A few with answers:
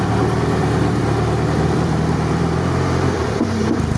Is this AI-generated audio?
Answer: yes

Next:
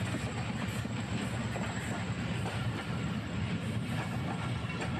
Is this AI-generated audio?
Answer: no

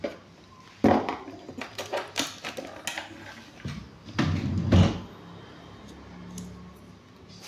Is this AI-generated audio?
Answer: no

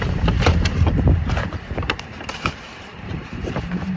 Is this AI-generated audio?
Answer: yes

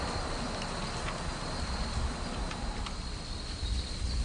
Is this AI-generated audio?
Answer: no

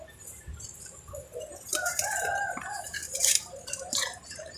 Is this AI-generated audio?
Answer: yes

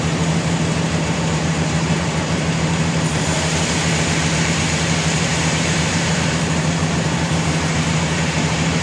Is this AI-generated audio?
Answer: yes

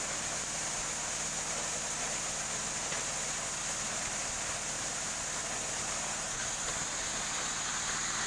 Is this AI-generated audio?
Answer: no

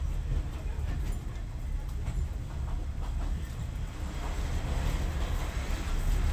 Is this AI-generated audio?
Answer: no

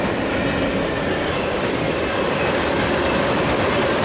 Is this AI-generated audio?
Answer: yes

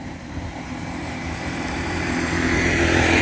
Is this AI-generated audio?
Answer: yes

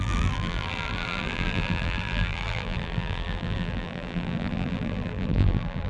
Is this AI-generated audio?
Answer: yes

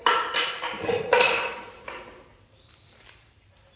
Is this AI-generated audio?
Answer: yes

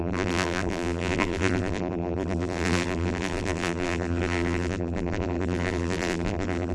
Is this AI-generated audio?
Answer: yes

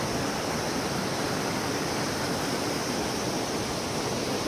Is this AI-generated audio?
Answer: no